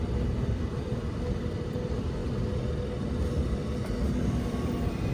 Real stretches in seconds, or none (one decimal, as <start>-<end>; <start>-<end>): 2.2-3.3